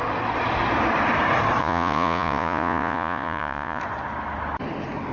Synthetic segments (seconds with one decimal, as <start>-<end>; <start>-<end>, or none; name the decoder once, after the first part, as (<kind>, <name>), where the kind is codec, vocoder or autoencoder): 1.6-3.8 (vocoder, Vocos)